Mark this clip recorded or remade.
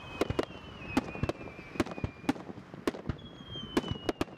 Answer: recorded